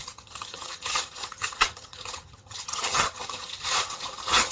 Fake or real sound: fake